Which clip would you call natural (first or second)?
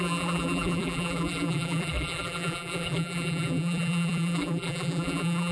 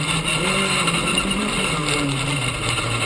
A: second